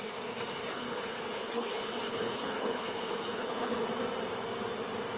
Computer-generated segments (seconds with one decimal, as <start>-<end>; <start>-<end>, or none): 0.7-3.8